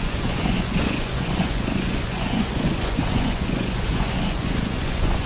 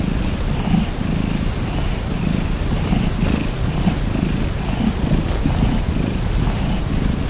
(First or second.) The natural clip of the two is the second